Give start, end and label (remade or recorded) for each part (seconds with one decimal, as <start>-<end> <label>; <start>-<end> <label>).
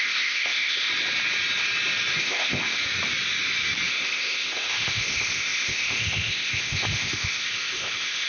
0.0-0.9 remade; 0.9-2.2 recorded; 2.2-2.8 remade; 2.8-3.9 recorded; 3.9-8.3 remade